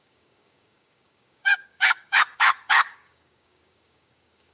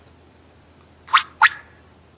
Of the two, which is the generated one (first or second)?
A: first